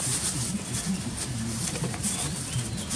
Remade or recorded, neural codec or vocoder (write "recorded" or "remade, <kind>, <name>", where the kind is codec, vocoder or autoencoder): recorded